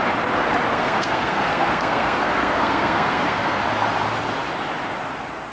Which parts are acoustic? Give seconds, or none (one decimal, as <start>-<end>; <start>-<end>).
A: 0.0-0.7; 3.6-5.5